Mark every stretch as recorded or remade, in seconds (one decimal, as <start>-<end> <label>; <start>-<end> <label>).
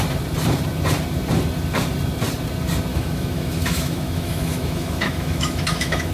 0.0-2.9 recorded; 2.9-6.1 remade